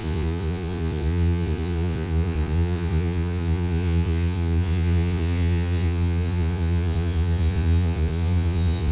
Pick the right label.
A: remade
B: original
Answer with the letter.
A